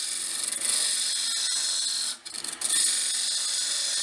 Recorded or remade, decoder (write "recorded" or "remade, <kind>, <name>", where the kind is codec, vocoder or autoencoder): recorded